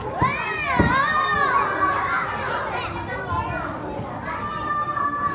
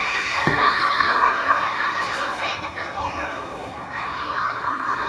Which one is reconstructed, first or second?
second